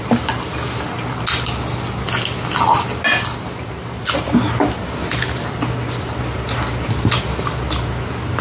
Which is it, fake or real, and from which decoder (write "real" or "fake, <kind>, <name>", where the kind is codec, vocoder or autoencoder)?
real